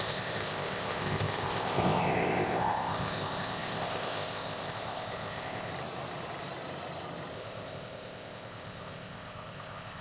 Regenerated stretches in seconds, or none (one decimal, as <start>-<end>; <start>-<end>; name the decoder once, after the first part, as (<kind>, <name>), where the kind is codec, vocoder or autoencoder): 0.0-5.7 (codec, ZipCodec); 7.3-10.0